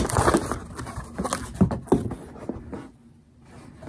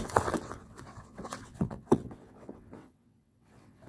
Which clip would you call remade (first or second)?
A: second